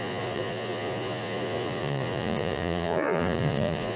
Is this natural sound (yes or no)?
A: no